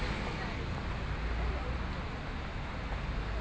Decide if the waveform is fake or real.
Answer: real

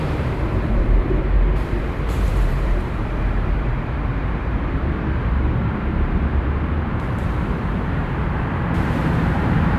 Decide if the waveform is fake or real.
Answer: fake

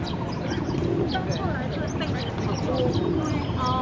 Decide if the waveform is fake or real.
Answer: real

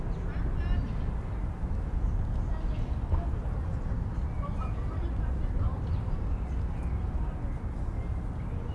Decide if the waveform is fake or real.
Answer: real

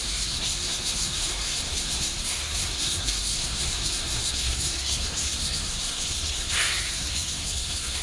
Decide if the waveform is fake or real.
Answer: fake